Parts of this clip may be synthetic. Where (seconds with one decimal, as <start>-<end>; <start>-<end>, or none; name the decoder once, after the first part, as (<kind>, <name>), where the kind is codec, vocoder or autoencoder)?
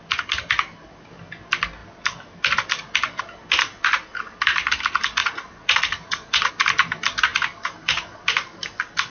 5.2-6.5 (vocoder, Vocos)